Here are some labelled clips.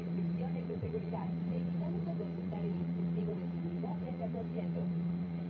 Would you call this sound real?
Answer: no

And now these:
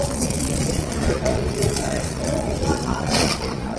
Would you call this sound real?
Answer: no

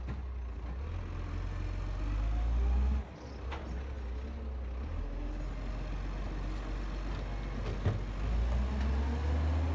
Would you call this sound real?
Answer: yes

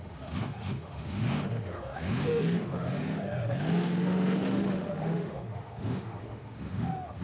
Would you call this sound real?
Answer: no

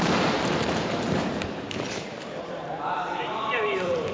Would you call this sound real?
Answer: no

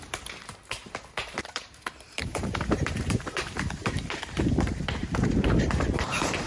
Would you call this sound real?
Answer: no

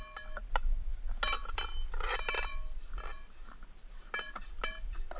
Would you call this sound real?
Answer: yes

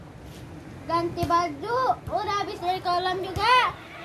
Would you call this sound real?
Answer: yes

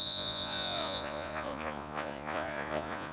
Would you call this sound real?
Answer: no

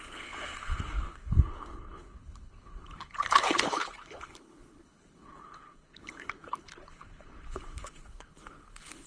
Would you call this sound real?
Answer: no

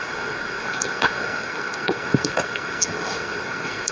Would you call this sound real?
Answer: no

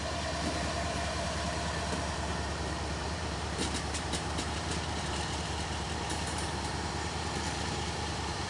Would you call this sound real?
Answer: no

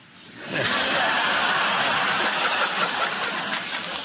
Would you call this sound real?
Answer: yes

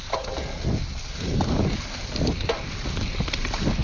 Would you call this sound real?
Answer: yes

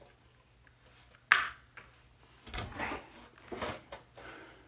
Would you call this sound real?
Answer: yes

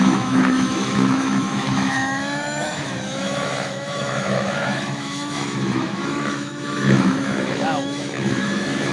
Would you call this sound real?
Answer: no